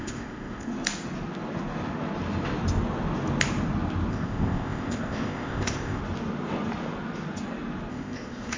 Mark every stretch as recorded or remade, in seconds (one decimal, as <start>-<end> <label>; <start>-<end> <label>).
0.0-0.7 remade; 0.7-4.1 recorded; 4.1-6.0 remade; 6.0-7.9 recorded; 7.9-8.6 remade